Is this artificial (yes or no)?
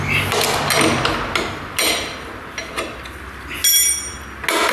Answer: no